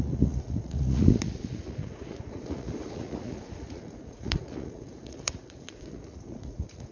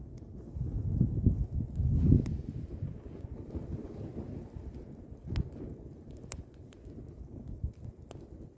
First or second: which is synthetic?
first